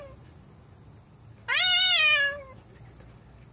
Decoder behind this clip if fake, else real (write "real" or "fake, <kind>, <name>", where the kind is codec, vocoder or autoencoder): real